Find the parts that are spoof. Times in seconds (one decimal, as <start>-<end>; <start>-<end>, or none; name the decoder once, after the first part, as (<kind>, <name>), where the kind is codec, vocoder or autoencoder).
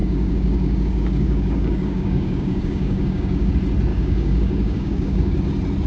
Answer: 0.0-3.5 (codec, DAC); 3.9-5.4